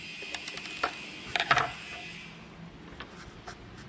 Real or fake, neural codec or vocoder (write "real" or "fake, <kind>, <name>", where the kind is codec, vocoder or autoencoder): real